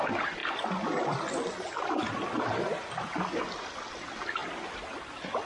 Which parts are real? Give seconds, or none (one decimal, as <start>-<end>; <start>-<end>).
0.0-5.5